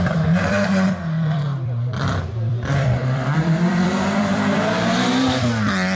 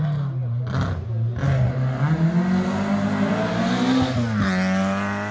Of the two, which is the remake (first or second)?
first